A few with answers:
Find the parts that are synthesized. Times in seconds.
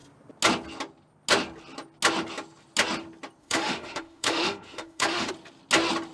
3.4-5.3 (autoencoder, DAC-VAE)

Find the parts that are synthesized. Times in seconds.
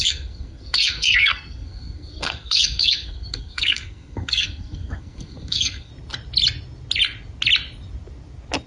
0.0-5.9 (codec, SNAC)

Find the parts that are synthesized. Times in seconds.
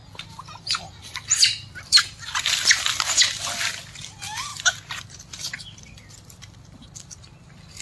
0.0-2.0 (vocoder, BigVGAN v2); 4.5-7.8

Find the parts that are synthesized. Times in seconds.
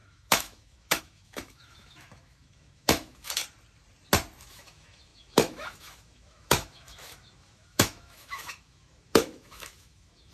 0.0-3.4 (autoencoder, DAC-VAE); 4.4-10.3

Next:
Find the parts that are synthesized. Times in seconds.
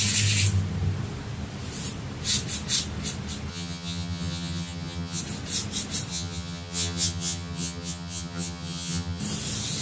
3.5-5.2 (vocoder, HiFi-GAN); 6.1-9.2